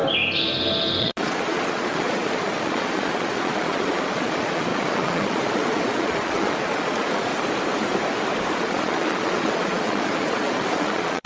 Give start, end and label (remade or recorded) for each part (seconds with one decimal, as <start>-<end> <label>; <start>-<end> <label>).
0.0-1.0 recorded; 1.0-7.3 remade; 7.3-8.6 recorded; 8.6-11.3 remade